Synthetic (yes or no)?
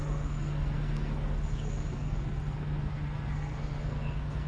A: yes